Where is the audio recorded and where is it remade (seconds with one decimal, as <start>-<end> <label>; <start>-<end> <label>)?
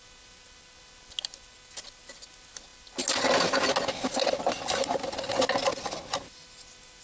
0.0-7.0 recorded